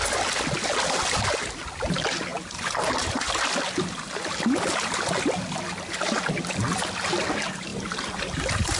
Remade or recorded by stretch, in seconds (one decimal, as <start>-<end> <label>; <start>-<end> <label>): 0.0-7.7 recorded; 7.7-8.4 remade; 8.4-8.8 recorded